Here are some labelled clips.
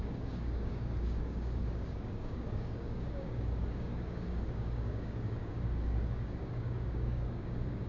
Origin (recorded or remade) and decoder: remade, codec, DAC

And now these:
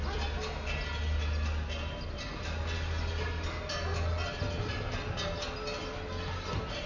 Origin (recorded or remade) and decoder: recorded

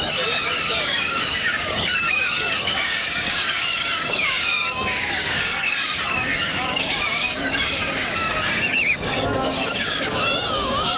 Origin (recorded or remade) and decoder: remade, codec, DAC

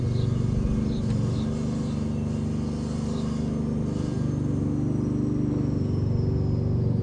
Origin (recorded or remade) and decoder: recorded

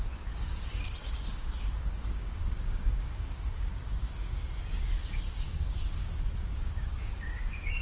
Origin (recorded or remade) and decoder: remade, codec, DAC